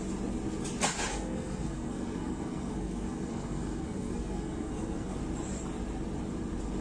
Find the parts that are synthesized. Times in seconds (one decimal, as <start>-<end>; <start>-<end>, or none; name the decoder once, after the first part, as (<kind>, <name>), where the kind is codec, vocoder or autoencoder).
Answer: 1.1-5.2 (codec, SNAC)